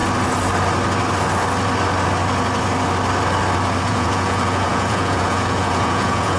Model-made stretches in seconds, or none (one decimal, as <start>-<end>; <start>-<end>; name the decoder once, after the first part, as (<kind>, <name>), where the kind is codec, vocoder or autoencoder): 3.8-6.4 (vocoder, Vocos)